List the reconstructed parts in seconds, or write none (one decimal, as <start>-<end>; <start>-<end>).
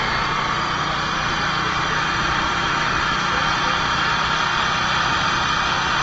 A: none